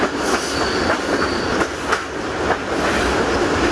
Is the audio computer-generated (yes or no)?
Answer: no